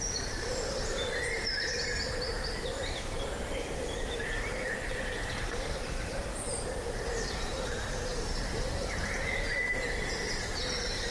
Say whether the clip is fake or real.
fake